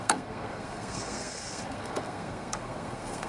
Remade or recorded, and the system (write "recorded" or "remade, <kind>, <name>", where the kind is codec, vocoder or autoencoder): remade, codec, SNAC